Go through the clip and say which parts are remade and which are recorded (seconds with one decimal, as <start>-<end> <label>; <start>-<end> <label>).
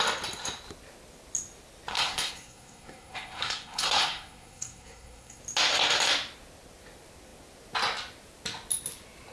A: 0.0-1.9 recorded; 1.9-5.4 remade; 5.4-9.3 recorded